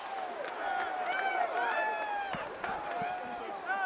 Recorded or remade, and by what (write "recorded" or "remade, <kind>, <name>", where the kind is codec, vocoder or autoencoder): recorded